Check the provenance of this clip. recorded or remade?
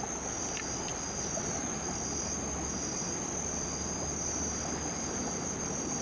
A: recorded